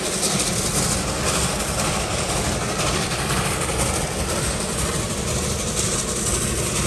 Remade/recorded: recorded